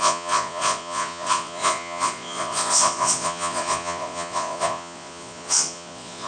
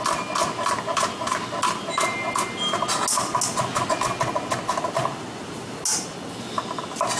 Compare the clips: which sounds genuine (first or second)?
second